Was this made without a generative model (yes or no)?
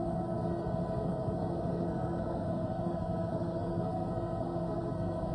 no